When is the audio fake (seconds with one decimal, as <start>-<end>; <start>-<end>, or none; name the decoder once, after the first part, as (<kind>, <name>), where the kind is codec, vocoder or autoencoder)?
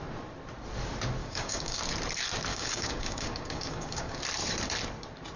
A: 1.2-1.8 (codec, DAC); 2.5-4.2